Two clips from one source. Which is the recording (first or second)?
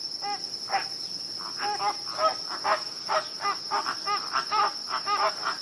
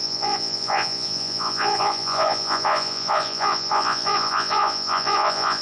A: first